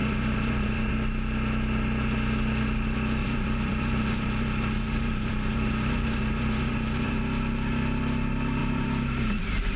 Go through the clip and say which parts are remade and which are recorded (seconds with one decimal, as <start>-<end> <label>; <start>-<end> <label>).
0.0-0.9 remade; 0.9-3.2 recorded; 3.2-7.2 remade; 7.2-8.6 recorded; 8.6-9.8 remade